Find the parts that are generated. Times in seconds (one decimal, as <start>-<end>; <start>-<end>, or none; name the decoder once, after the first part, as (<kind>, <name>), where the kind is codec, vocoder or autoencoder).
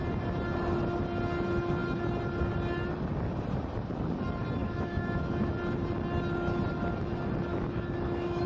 4.6-5.5 (autoencoder, DAC-VAE); 7.5-8.5